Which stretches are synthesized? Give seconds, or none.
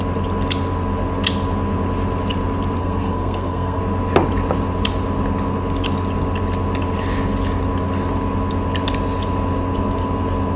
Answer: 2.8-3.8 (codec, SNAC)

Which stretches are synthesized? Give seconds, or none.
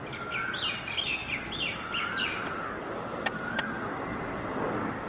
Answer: 1.2-3.6 (vocoder, BigVGAN v2)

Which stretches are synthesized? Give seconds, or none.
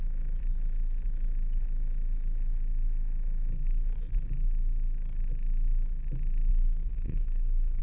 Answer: 6.5-7.8 (codec, SNAC)